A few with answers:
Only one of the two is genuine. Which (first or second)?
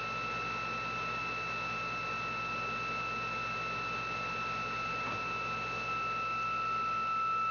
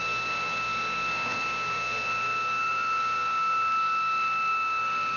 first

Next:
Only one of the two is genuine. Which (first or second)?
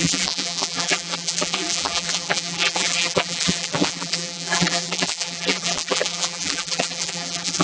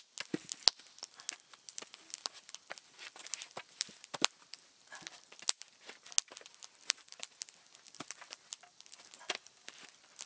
second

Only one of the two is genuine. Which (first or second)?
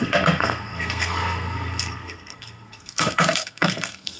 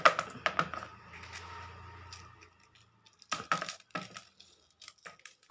second